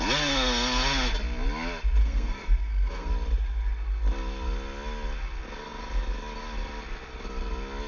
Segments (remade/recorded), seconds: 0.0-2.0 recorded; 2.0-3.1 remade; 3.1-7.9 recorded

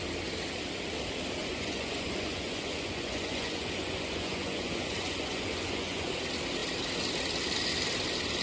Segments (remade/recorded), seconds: 0.0-1.4 recorded; 1.4-6.1 remade; 6.1-8.4 recorded

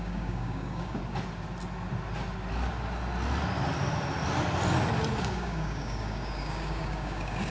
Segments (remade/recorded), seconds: 0.0-1.0 remade; 1.0-5.2 recorded; 5.2-7.5 remade

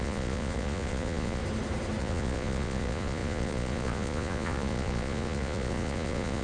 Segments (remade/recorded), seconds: 0.0-1.4 remade; 1.4-2.0 recorded; 2.0-6.4 remade

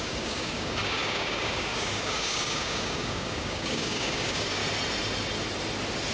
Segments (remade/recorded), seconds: 0.0-4.6 remade; 4.6-6.1 recorded

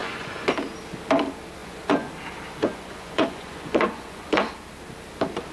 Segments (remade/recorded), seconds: 0.0-0.5 remade; 0.5-1.6 recorded; 1.6-2.1 remade; 2.1-2.6 recorded; 2.6-4.5 remade; 4.5-5.5 recorded

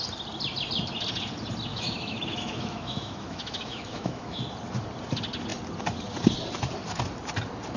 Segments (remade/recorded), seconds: 0.0-1.7 recorded; 1.7-4.4 remade; 4.4-7.8 recorded

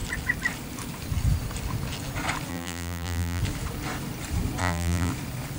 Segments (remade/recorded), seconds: 0.0-2.5 recorded; 2.5-3.4 remade; 3.4-4.6 recorded; 4.6-5.1 remade; 5.1-5.6 recorded